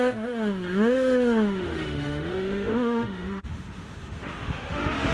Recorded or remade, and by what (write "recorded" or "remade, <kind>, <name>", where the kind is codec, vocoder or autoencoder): remade, autoencoder, DAC-VAE